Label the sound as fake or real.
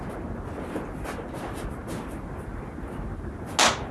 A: real